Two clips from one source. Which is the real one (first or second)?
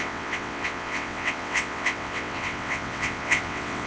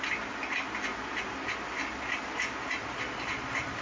second